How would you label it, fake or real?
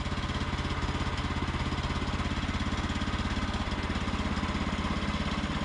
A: real